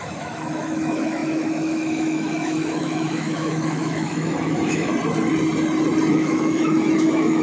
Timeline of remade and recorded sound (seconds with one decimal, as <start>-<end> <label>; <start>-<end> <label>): 0.0-4.9 remade; 4.9-6.1 recorded; 6.1-7.4 remade